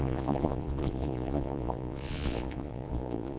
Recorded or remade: remade